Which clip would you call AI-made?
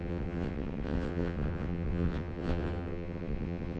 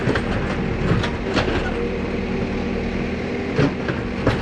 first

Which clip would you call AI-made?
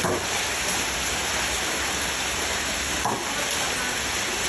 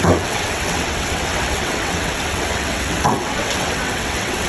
second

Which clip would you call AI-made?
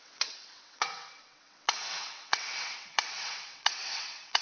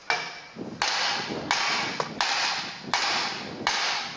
first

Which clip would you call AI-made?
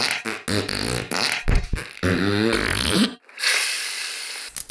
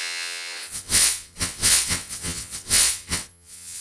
second